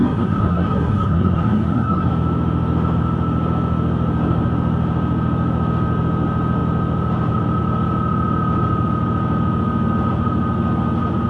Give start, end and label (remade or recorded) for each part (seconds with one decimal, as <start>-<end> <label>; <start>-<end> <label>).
0.0-2.1 remade; 2.1-11.3 recorded